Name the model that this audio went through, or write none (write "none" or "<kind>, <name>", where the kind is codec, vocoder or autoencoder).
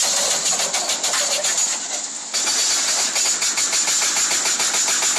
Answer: none